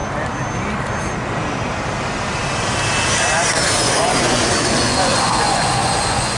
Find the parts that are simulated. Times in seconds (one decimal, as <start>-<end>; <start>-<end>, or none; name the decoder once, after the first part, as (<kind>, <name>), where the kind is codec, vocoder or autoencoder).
3.8-6.4 (vocoder, Vocos)